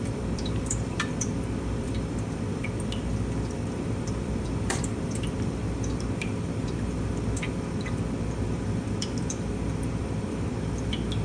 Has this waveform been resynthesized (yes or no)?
yes